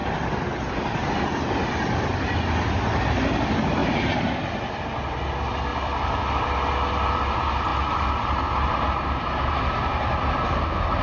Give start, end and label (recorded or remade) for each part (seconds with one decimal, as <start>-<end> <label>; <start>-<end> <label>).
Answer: 0.0-2.4 remade; 2.4-3.8 recorded; 3.8-4.8 remade; 4.8-5.7 recorded; 5.7-6.2 remade; 6.2-11.0 recorded